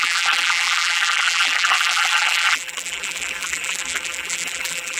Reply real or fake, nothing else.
fake